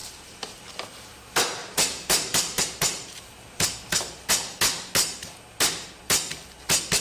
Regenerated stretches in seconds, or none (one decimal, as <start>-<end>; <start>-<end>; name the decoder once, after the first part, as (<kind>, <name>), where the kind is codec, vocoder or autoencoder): 0.0-1.1 (vocoder, BigVGAN v2); 1.6-4.3